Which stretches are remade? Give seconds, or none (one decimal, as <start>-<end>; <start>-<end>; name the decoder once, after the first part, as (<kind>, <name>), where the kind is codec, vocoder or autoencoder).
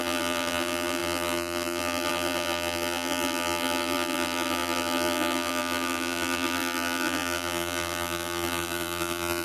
0.0-9.4 (vocoder, BigVGAN v2)